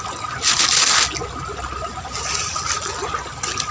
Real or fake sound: real